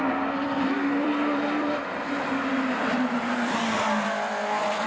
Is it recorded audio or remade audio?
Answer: remade